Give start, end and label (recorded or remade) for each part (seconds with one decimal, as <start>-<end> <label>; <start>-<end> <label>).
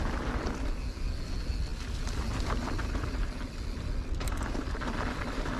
0.0-5.6 recorded